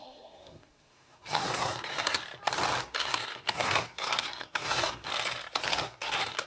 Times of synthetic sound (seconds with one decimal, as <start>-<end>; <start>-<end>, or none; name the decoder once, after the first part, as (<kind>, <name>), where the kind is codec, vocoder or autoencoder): 0.0-2.2 (codec, SNAC); 2.8-5.1; 5.7-6.5